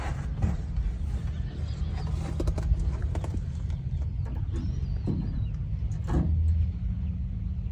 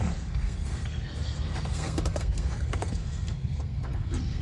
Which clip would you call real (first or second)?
first